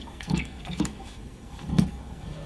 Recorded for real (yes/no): no